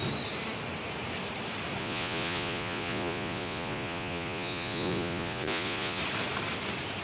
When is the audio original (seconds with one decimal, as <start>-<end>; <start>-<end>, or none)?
0.0-1.8; 6.0-7.0